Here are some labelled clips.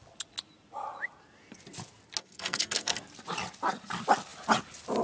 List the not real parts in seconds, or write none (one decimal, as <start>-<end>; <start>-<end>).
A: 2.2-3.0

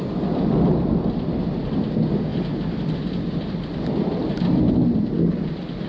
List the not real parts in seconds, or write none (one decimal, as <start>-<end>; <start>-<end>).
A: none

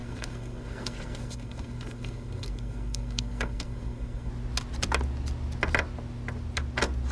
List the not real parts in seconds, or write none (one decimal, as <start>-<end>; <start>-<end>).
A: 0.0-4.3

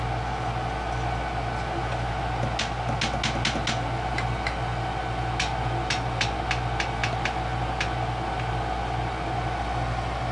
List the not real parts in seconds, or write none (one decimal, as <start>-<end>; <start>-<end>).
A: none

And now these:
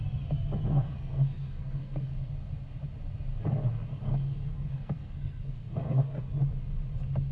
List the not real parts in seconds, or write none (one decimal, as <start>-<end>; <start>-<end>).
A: 0.6-2.3; 3.9-6.3